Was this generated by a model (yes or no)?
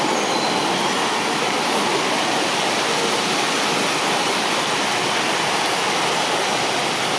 no